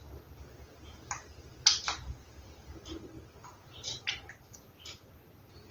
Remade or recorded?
recorded